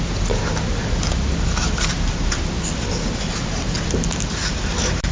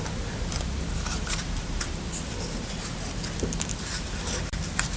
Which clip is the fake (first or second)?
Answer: second